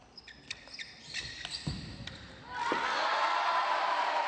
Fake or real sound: real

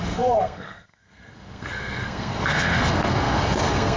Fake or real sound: fake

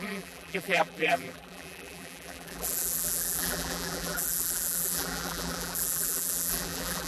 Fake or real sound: fake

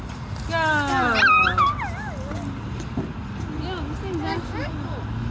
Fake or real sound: real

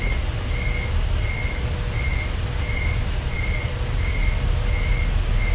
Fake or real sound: real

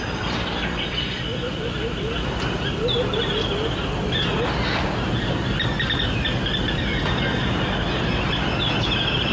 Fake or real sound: real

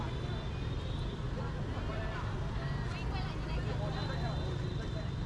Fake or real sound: real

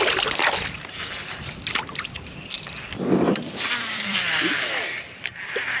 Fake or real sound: fake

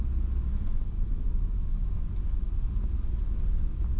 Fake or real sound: real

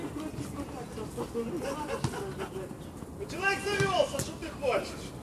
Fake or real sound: real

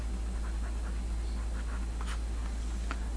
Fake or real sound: real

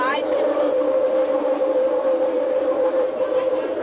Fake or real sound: fake